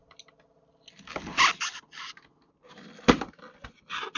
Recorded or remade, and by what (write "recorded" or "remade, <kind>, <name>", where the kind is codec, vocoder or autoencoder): recorded